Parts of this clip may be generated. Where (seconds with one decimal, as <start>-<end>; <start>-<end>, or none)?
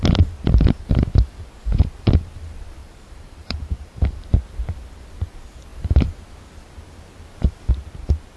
2.8-4.3